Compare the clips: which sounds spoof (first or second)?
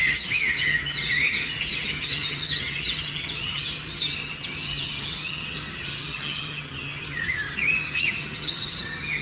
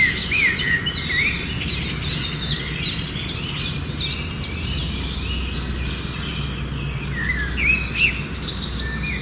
first